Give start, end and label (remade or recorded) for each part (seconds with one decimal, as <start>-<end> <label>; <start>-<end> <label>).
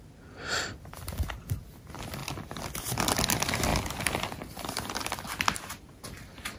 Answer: 0.0-6.6 recorded